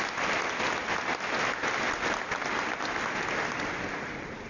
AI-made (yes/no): no